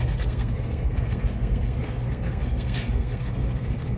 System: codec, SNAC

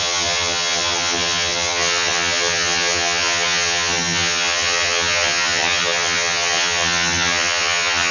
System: vocoder, HiFi-GAN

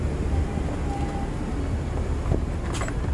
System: none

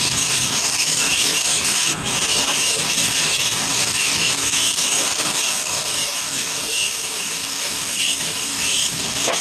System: codec, DAC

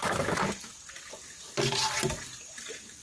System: none